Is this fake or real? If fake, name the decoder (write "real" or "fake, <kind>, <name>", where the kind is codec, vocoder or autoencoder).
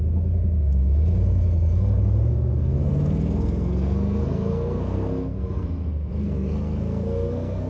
fake, codec, SNAC